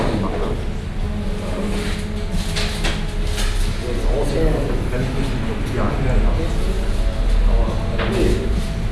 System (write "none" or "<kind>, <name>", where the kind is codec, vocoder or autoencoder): none